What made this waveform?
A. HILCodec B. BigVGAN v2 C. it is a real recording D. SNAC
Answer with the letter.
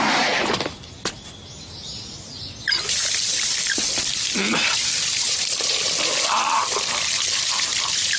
C